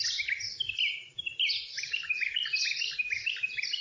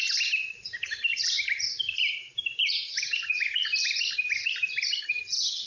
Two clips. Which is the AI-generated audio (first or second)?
second